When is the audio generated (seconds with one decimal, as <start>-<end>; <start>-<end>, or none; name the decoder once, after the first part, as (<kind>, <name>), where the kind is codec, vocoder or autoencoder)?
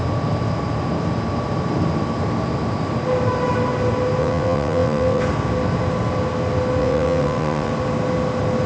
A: 4.2-5.2 (vocoder, WaveNeXt); 6.8-7.7